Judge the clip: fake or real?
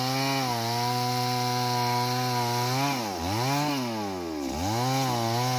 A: real